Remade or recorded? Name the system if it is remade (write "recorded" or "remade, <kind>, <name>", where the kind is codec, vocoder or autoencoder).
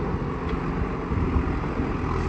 recorded